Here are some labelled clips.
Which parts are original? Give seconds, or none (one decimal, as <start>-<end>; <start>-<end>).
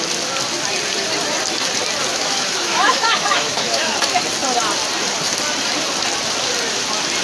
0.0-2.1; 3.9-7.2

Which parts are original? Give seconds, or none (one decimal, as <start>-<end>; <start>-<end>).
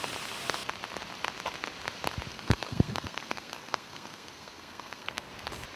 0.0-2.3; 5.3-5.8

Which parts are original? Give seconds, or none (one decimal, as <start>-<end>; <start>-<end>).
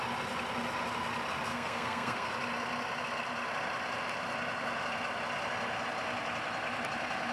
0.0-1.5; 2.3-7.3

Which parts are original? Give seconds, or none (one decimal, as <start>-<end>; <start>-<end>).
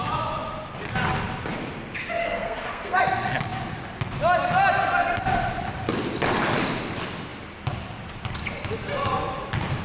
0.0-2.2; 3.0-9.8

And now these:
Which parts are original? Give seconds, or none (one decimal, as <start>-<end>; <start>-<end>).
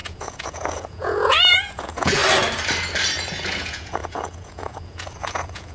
2.2-3.3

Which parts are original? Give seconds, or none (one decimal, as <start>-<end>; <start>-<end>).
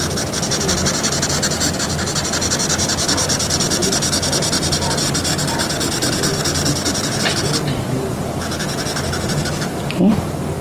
0.0-10.6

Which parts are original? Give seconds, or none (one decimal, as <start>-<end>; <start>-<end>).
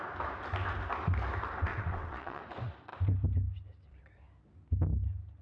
0.0-1.7; 2.4-5.4